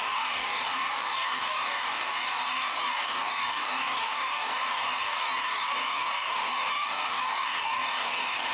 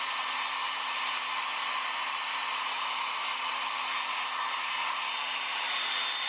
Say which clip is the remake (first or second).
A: first